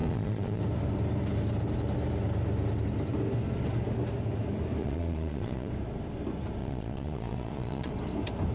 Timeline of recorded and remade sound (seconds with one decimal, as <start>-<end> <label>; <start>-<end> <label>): 0.0-0.6 remade; 0.6-4.8 recorded; 4.8-5.7 remade; 5.7-6.6 recorded; 6.6-7.9 remade; 7.9-8.5 recorded